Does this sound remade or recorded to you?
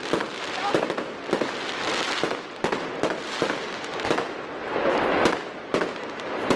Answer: recorded